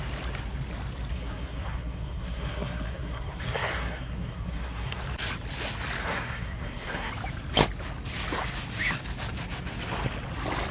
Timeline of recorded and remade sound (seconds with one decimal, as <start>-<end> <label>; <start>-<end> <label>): 0.0-1.1 recorded; 1.1-5.0 remade; 5.0-6.0 recorded; 6.0-7.1 remade; 7.1-10.7 recorded